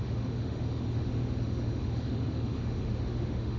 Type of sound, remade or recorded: remade